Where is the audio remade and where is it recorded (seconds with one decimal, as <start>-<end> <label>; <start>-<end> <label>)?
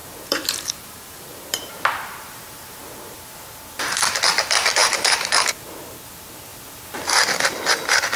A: 0.0-3.3 remade; 3.3-4.8 recorded; 4.8-5.7 remade; 5.7-8.2 recorded